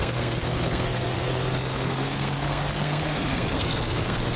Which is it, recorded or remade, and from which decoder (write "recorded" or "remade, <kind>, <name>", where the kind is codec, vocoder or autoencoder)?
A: remade, codec, SNAC